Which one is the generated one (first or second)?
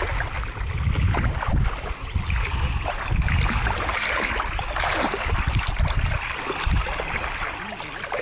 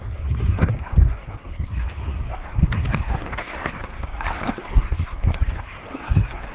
second